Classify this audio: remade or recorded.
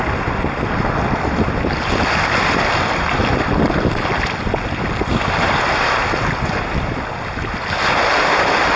recorded